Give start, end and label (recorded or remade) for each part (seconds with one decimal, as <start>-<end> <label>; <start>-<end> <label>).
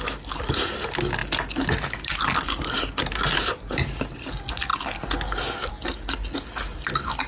0.0-1.2 recorded; 1.2-2.2 remade; 2.2-7.3 recorded